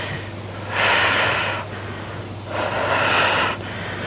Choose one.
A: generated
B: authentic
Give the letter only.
B